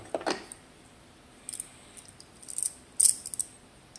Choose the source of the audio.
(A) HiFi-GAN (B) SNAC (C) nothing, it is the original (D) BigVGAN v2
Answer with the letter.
C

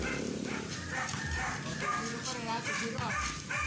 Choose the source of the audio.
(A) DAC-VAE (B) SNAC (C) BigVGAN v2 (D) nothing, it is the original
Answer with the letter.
C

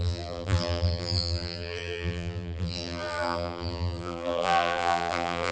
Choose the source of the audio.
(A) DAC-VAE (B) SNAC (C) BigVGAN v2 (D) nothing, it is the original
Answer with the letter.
C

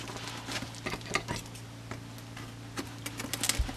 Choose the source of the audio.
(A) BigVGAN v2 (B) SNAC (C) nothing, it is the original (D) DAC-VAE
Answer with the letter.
C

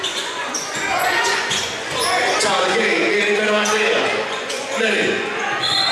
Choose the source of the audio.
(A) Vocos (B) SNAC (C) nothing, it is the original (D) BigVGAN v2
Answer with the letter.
A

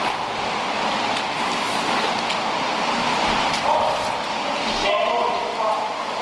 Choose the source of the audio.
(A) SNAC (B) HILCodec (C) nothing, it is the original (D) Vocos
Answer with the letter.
C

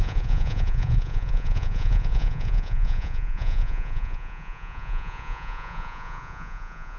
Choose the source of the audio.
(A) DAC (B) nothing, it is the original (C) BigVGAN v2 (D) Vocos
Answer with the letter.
D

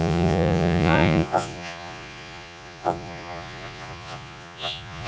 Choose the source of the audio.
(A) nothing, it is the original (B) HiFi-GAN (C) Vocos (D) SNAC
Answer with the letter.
C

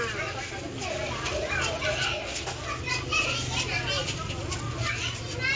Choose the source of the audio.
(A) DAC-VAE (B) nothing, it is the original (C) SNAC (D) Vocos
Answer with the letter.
B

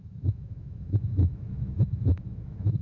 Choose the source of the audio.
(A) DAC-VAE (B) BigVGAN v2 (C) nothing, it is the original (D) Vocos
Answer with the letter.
A